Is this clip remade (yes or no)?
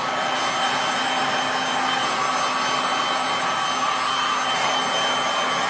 no